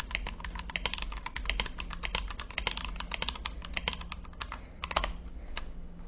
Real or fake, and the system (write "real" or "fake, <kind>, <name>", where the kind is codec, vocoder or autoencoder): real